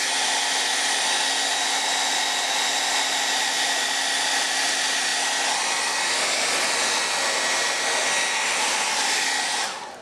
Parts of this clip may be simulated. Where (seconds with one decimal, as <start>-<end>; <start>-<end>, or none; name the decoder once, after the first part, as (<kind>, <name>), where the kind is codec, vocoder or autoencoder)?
none